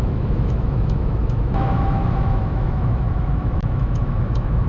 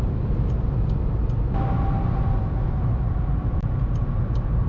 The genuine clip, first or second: second